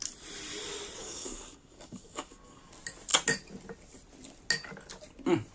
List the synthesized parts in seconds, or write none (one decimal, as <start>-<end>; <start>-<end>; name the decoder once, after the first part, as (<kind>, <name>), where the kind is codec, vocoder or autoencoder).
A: 1.0-2.7 (codec, DAC)